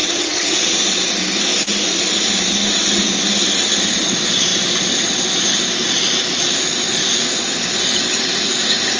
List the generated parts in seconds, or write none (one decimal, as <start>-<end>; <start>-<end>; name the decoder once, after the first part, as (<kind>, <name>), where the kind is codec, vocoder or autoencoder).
0.0-0.8 (vocoder, WaveNeXt)